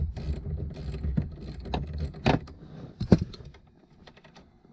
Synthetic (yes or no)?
no